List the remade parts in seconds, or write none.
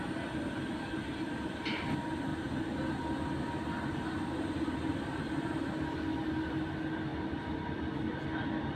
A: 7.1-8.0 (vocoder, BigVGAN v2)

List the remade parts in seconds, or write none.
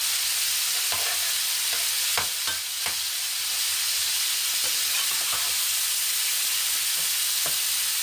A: none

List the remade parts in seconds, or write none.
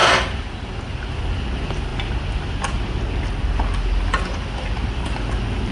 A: 4.8-5.7 (vocoder, BigVGAN v2)